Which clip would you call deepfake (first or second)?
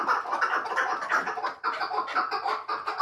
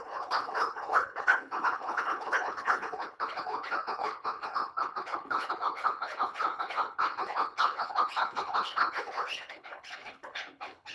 second